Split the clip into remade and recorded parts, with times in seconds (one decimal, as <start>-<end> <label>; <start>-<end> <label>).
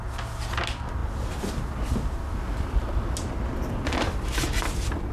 0.0-5.1 recorded